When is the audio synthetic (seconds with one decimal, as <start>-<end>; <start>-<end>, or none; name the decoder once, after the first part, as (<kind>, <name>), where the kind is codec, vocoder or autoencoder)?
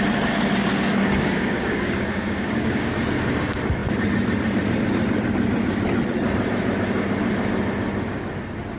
0.9-2.9 (codec, DAC)